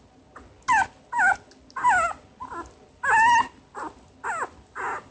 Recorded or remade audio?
recorded